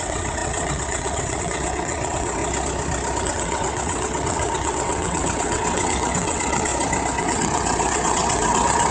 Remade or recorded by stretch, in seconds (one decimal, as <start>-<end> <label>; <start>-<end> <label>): 0.0-2.4 remade; 2.4-3.2 recorded; 3.2-6.7 remade; 6.7-7.2 recorded; 7.2-8.9 remade